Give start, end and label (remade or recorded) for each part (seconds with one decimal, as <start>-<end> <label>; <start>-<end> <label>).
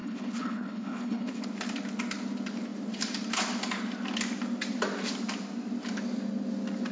0.0-1.4 remade; 1.4-6.9 recorded